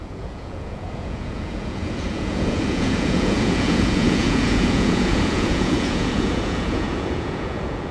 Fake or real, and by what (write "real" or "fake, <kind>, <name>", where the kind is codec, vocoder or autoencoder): fake, vocoder, Vocos